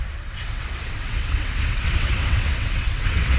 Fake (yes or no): yes